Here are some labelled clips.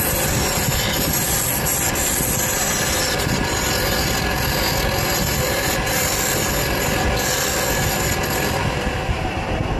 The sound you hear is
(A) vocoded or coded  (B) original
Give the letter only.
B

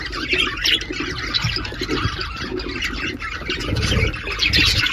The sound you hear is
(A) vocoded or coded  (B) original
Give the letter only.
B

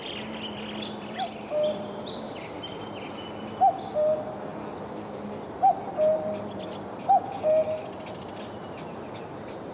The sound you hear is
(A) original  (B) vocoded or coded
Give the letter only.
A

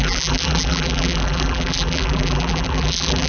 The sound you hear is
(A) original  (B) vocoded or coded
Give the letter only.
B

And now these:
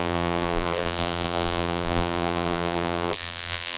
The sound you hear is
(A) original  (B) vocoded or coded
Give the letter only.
B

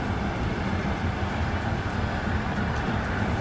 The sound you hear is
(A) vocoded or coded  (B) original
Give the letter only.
A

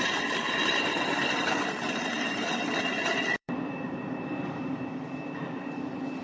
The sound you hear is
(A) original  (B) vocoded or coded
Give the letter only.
B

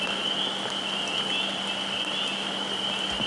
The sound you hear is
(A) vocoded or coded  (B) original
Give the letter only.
B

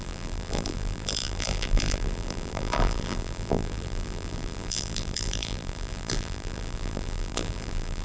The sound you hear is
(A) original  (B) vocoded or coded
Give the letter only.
B